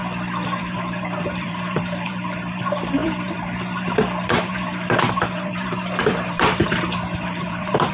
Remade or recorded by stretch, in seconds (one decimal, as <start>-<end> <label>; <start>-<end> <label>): 0.0-0.6 recorded; 0.6-7.9 remade